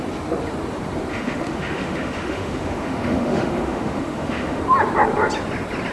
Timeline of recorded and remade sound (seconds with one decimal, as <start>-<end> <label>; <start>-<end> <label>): 0.0-1.1 recorded; 1.1-4.6 remade; 4.6-5.9 recorded